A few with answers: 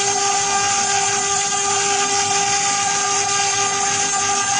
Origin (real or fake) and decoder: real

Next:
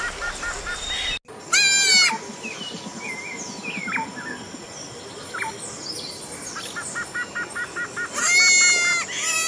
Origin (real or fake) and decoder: real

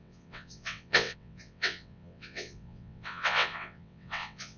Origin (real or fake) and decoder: fake, vocoder, WaveNeXt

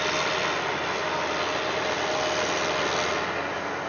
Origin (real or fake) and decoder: real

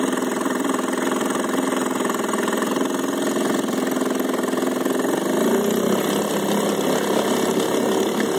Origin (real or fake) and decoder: real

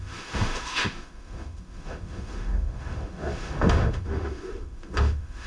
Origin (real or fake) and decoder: fake, autoencoder, DAC-VAE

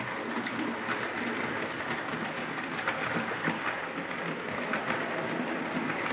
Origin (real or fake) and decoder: real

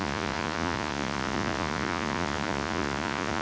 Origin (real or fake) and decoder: fake, vocoder, Vocos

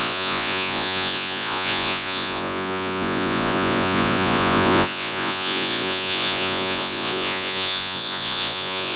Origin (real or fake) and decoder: fake, vocoder, Vocos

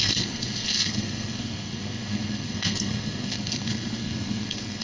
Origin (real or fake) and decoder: fake, codec, SNAC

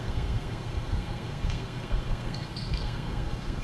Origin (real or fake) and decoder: fake, codec, SNAC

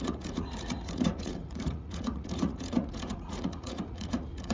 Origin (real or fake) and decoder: fake, vocoder, Vocos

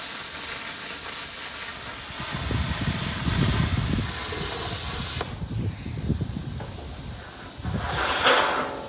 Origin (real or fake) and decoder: real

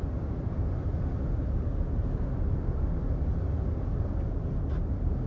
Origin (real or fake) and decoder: real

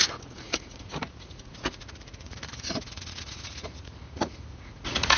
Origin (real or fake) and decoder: fake, vocoder, Vocos